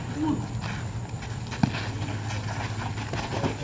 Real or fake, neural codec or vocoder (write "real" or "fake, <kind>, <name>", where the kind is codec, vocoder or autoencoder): real